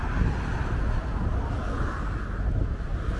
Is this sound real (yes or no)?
yes